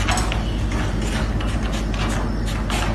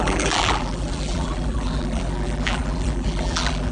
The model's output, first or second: second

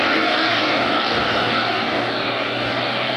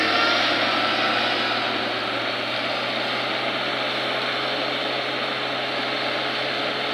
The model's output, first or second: first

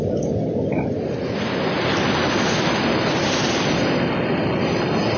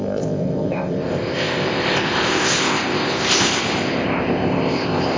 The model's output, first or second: second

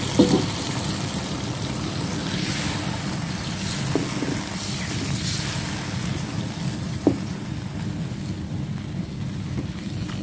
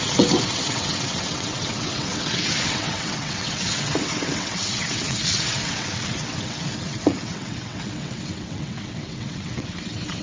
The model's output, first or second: second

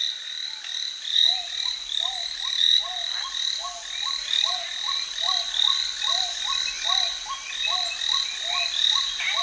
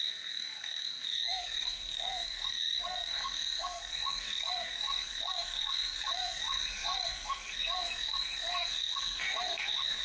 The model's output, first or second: second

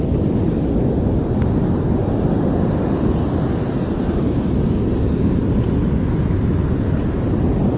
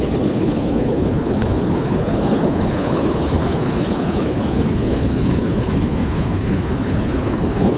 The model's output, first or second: second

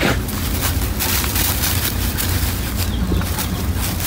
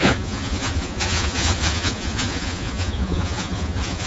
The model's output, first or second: second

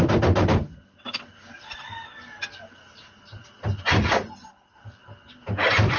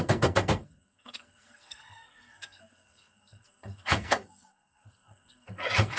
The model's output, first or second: second